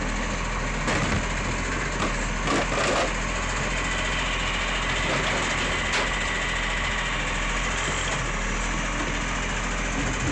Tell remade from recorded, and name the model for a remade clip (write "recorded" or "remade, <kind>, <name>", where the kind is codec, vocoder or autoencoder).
recorded